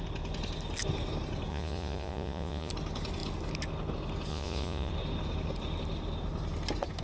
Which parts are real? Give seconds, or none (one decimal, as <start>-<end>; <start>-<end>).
0.0-1.5; 2.7-4.3; 4.9-7.0